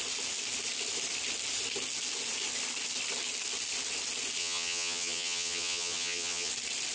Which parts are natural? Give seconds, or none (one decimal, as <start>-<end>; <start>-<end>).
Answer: 0.0-4.4; 6.5-6.9